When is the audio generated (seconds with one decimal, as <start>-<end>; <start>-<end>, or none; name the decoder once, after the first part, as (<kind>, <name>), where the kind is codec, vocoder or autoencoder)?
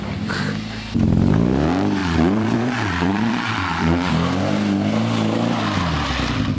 2.0-4.1 (vocoder, Vocos)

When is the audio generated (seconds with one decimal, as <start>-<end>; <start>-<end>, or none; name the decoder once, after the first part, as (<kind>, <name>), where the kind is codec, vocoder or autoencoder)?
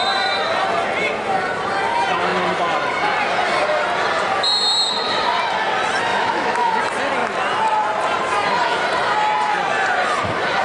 6.1-6.8 (autoencoder, DAC-VAE)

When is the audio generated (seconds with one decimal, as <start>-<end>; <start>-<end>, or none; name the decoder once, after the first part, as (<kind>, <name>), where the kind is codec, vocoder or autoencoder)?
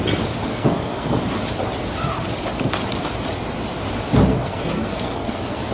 0.5-1.2 (codec, SNAC); 4.3-5.7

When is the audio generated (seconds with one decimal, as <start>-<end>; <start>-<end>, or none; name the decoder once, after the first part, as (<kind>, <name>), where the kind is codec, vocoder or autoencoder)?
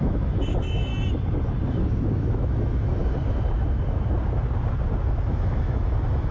0.0-0.9 (autoencoder, DAC-VAE); 1.7-3.0; 5.3-6.3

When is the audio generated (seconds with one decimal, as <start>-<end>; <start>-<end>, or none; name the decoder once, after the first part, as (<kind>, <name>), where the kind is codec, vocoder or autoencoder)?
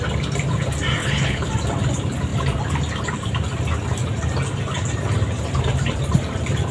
1.0-1.5 (codec, HILCodec)